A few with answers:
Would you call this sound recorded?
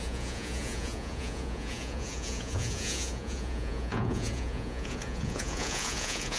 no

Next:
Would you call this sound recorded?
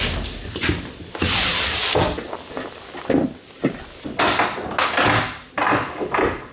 yes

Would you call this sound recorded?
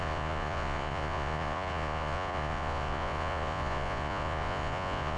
no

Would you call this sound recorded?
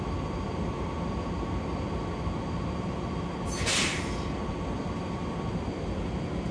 yes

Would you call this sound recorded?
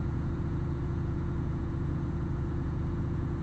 no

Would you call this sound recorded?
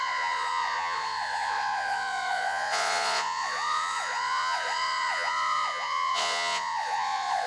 no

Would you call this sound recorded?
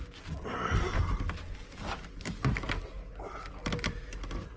yes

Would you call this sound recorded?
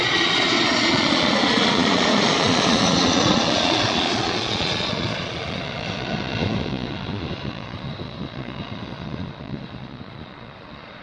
no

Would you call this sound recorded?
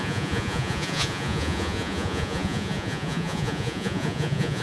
no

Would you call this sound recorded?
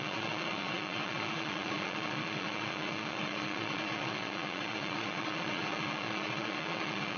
no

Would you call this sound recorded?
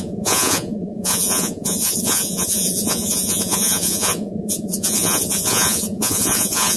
no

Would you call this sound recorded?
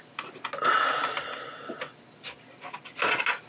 yes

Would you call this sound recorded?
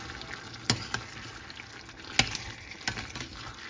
yes